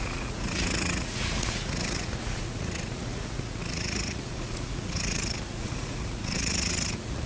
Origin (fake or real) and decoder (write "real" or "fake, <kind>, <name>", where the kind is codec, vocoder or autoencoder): fake, vocoder, Vocos